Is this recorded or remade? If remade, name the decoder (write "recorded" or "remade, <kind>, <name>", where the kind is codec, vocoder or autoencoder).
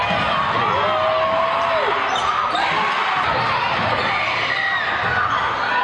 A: recorded